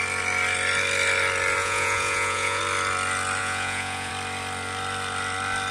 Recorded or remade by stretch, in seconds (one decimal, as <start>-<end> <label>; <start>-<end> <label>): 0.0-1.6 recorded; 1.6-2.6 remade; 2.6-3.4 recorded; 3.4-4.1 remade; 4.1-5.7 recorded